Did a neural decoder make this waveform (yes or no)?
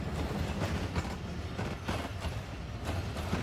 no